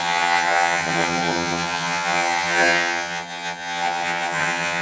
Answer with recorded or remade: remade